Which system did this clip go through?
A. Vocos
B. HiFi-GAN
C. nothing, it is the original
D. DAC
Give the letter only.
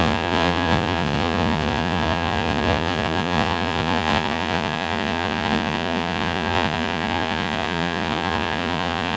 A